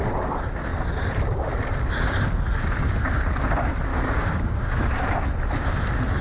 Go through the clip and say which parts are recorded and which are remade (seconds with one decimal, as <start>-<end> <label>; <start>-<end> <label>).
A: 0.0-3.9 recorded; 3.9-4.9 remade; 4.9-6.2 recorded